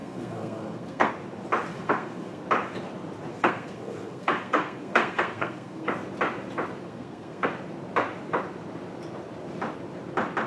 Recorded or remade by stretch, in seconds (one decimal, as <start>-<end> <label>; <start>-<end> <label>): 0.0-1.1 remade; 1.1-1.7 recorded; 1.7-2.4 remade; 2.4-3.3 recorded; 3.3-5.9 remade; 5.9-6.8 recorded; 6.8-7.5 remade; 7.5-10.5 recorded